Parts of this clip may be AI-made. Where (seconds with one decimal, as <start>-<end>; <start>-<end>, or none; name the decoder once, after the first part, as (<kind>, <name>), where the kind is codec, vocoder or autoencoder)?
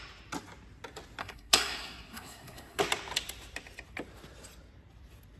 1.2-2.8 (codec, SNAC)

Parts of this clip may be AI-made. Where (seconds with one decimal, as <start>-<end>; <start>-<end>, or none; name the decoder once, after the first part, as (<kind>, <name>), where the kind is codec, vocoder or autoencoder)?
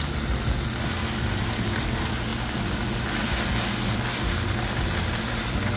none